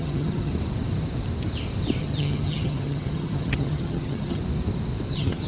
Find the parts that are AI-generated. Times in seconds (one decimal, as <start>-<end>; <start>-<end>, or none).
0.0-0.5; 2.0-4.4; 5.1-5.5